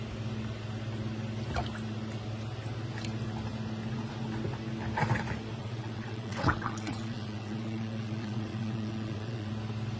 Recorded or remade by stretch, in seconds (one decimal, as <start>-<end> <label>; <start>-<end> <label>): 0.0-5.6 recorded; 5.6-9.5 remade; 9.5-10.0 recorded